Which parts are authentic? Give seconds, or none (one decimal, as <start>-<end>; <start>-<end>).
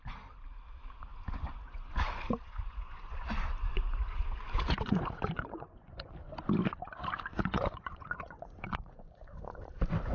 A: 0.0-1.1; 6.1-7.3; 9.7-10.1